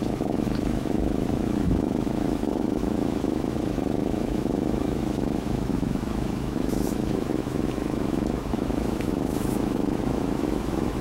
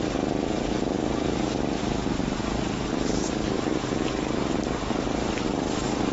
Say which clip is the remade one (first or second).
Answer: first